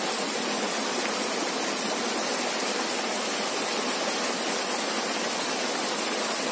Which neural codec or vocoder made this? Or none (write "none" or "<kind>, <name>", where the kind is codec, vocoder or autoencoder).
none